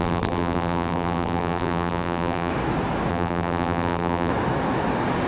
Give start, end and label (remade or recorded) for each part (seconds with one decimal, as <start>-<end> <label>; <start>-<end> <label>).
0.0-2.5 remade; 2.5-3.1 recorded; 3.1-4.3 remade; 4.3-5.3 recorded